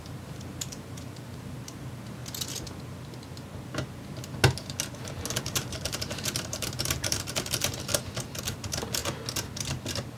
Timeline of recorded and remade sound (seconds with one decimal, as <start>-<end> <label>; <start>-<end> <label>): 0.0-2.2 remade; 2.2-5.4 recorded; 5.4-7.9 remade; 7.9-8.4 recorded; 8.4-9.0 remade; 9.0-10.2 recorded